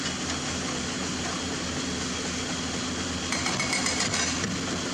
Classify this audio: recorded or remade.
recorded